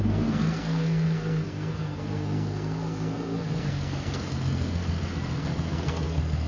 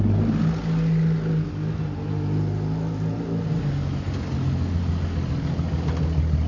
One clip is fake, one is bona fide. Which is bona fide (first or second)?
second